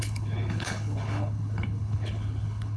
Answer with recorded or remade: remade